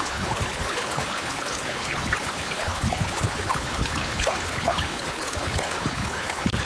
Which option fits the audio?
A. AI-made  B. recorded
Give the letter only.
A